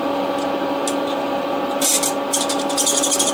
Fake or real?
real